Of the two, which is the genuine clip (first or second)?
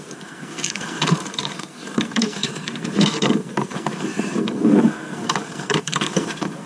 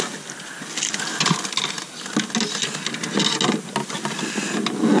second